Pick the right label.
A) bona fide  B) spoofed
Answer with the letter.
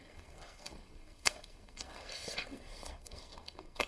B